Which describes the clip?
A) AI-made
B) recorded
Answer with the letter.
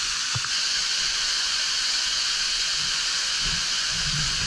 A